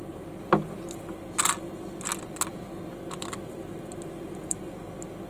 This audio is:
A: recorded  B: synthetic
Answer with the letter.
A